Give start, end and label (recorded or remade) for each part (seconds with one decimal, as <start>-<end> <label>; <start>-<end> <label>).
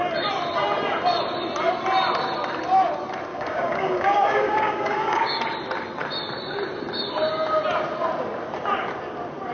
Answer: 0.0-3.3 recorded; 3.3-5.4 remade; 5.4-9.5 recorded